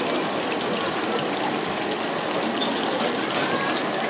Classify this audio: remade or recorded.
recorded